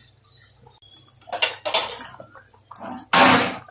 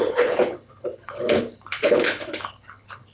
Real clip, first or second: first